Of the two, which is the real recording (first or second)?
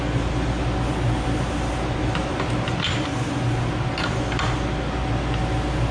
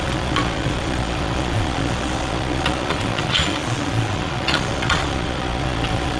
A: first